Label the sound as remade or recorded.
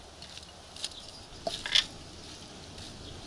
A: recorded